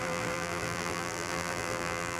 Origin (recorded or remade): remade